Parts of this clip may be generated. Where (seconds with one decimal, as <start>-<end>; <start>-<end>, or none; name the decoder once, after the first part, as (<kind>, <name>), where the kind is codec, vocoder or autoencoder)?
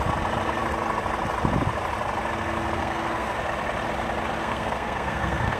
2.8-3.4 (codec, SNAC); 4.4-5.6